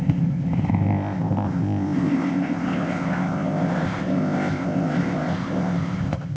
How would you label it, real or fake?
fake